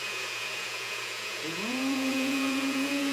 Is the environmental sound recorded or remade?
remade